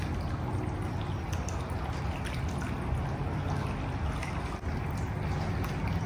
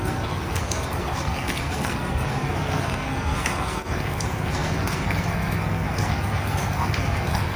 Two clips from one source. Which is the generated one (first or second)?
second